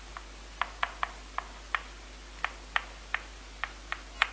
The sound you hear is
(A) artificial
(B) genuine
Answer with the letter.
B